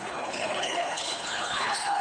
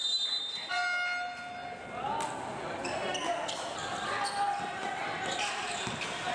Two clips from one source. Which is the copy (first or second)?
first